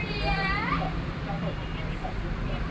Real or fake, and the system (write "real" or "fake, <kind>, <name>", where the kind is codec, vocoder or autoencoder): fake, vocoder, BigVGAN v2